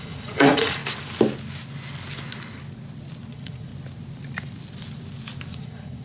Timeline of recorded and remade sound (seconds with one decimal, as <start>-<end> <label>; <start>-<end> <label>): 0.0-0.8 remade; 0.8-3.3 recorded; 3.3-3.7 remade; 3.7-5.5 recorded; 5.5-6.0 remade